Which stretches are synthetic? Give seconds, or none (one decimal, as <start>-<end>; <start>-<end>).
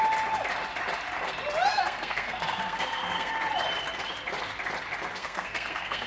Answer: 1.7-3.3; 5.2-6.1